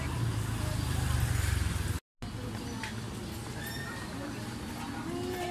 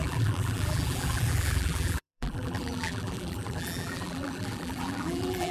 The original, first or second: first